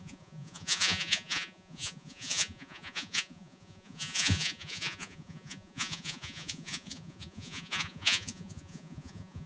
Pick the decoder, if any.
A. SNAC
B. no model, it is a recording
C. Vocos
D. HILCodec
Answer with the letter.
C